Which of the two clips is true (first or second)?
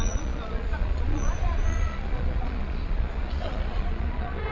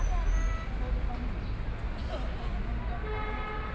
second